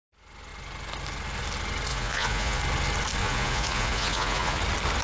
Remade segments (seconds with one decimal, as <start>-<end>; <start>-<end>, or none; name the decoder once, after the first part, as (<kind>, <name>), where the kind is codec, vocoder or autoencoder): 1.9-2.6 (vocoder, Vocos); 3.2-4.6